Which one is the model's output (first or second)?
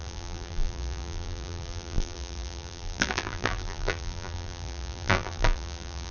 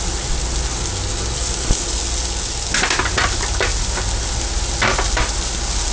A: first